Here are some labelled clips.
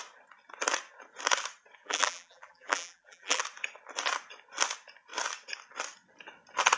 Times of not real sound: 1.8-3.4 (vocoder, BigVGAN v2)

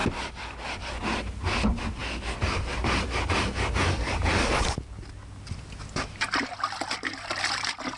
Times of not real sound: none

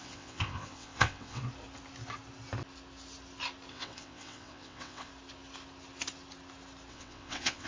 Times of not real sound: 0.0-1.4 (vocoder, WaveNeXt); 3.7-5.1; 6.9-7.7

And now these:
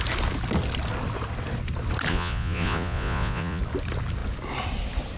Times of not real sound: 2.1-3.6 (vocoder, Vocos)

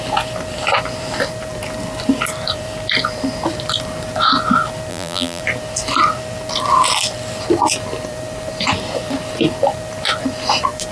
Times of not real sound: 4.9-5.4 (vocoder, BigVGAN v2)